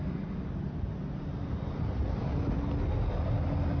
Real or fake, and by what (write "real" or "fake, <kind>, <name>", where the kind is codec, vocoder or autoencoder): real